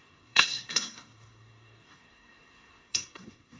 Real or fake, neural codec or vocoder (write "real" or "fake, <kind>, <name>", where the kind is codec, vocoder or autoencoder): fake, codec, SNAC